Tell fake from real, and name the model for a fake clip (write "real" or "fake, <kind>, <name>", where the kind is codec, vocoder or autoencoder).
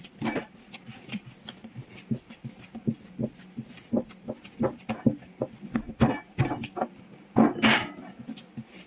real